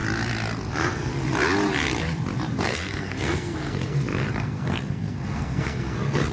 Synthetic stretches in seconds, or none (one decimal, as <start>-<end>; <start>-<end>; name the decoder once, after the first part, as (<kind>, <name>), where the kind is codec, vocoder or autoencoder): 0.7-1.1 (codec, SNAC); 2.6-6.3

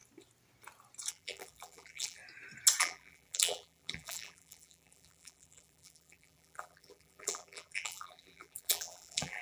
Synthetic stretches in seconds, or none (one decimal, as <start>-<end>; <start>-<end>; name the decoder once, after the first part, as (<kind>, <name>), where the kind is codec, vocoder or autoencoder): 1.1-2.2 (vocoder, BigVGAN v2); 2.8-9.4